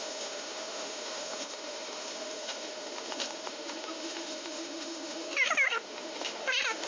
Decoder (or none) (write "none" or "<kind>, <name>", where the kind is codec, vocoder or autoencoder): autoencoder, DAC-VAE